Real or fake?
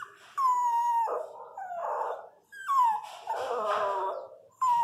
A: real